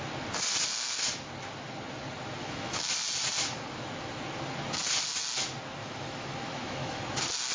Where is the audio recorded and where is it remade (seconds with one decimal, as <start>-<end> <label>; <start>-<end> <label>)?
0.0-2.4 recorded; 2.4-2.9 remade; 2.9-5.8 recorded; 5.8-7.0 remade; 7.0-7.5 recorded